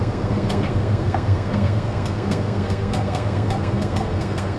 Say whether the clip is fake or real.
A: fake